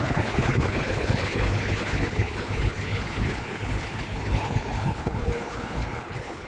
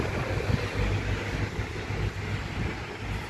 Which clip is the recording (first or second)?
second